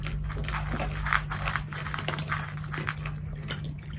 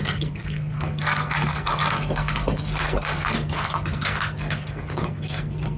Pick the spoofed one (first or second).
second